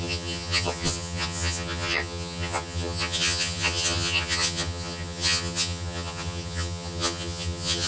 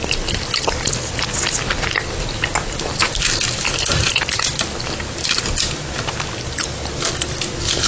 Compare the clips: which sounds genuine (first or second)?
second